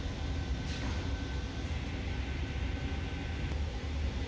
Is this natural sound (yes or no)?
yes